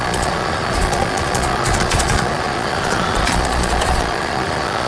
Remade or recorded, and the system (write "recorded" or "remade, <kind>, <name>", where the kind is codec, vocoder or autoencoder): remade, vocoder, Vocos